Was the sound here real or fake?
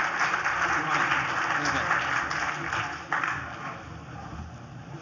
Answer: real